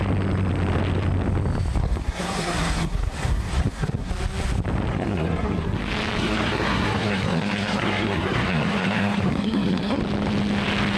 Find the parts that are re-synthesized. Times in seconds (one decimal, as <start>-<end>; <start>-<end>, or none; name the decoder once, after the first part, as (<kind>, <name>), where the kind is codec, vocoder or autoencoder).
1.8-4.1 (codec, SNAC); 4.9-5.8; 6.2-10.0